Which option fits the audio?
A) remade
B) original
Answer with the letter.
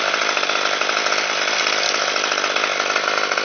B